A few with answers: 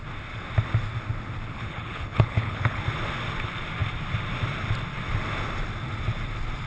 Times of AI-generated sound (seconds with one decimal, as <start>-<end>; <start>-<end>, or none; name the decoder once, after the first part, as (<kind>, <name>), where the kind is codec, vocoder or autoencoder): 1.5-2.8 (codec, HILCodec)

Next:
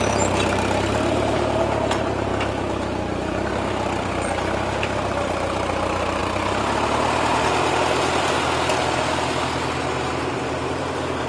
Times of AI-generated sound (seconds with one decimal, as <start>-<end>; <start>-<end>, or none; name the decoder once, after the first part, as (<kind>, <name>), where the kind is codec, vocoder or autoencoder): 0.0-6.2 (vocoder, BigVGAN v2); 10.0-11.3

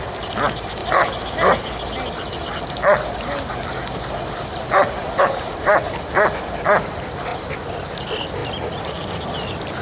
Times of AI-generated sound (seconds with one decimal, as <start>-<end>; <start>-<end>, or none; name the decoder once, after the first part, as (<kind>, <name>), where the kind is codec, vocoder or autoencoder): none